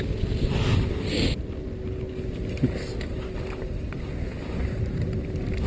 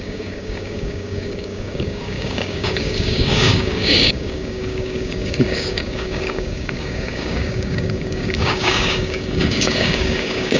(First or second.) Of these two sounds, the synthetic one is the second